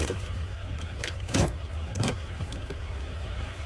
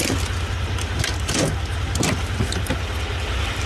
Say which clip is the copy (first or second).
first